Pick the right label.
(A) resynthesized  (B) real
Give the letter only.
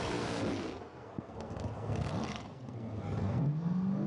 A